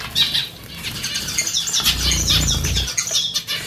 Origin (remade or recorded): recorded